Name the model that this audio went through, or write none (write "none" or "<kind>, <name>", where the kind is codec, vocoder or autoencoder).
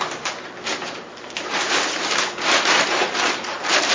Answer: vocoder, BigVGAN v2